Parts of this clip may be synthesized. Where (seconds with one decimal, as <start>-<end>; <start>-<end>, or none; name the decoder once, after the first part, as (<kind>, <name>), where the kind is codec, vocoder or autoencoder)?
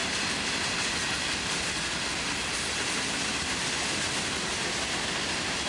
none